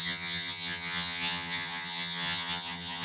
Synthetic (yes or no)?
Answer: yes